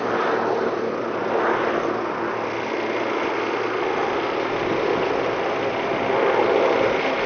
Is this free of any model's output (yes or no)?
yes